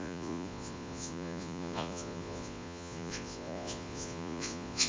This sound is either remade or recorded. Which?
remade